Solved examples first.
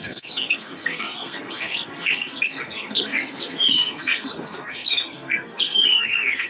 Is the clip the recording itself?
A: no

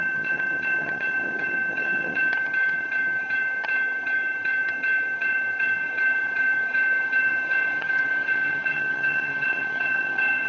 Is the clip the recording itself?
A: no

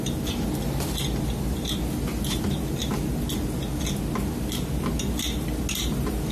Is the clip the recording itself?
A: yes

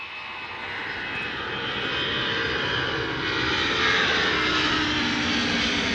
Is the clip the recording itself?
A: yes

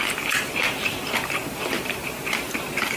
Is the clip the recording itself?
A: no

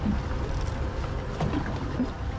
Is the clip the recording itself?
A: yes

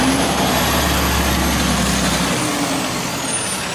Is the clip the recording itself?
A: yes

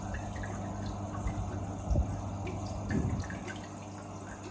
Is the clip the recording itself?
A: yes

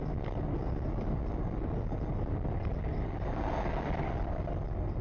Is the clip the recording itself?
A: yes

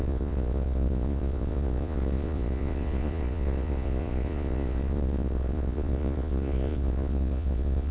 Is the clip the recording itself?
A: no